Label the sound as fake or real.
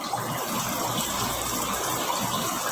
real